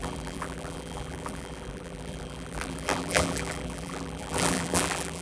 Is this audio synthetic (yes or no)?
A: yes